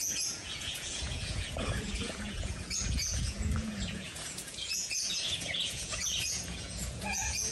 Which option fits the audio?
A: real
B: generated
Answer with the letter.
B